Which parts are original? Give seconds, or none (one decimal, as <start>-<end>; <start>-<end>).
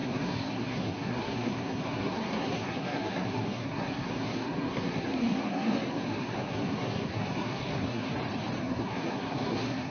8.1-8.6